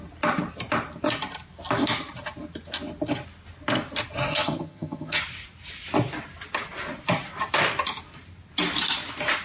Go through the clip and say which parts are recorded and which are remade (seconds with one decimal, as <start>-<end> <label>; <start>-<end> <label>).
0.0-4.3 recorded; 4.3-5.2 remade; 5.2-9.4 recorded